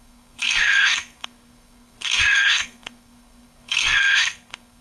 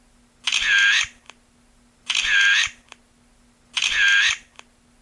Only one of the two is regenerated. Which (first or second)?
first